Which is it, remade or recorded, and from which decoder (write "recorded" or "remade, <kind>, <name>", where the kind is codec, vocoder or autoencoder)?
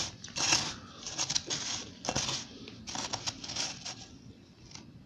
recorded